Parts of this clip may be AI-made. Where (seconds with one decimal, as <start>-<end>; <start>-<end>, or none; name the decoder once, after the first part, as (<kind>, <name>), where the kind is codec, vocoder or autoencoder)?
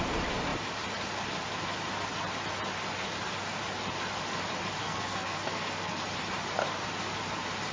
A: 4.8-6.0 (codec, SNAC)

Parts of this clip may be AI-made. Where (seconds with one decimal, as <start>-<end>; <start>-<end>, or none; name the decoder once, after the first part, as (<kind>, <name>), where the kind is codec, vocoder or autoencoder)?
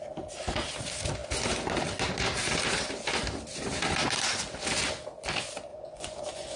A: 5.7-6.6 (vocoder, Vocos)